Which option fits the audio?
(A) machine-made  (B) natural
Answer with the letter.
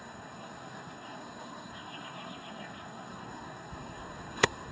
A